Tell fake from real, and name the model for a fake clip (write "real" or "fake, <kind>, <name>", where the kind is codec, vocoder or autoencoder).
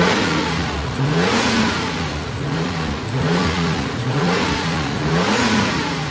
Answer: fake, vocoder, Vocos